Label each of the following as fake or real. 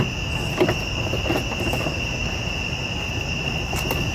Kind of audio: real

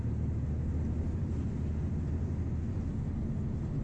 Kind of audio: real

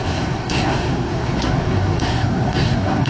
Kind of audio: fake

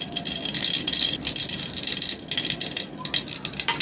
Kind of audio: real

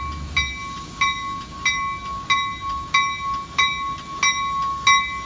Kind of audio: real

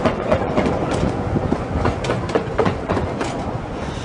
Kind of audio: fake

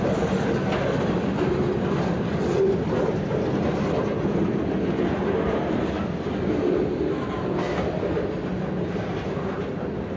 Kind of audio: real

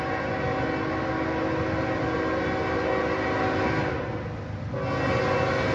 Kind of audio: real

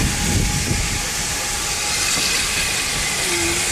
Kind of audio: real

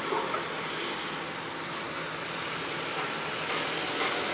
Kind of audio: real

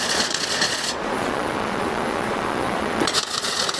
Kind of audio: fake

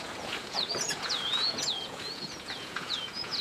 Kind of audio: fake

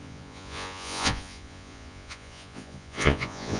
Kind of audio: fake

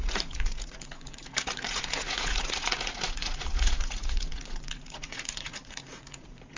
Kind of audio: fake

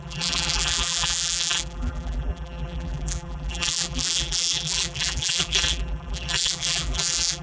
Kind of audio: fake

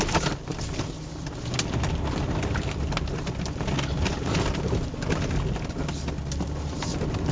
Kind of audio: real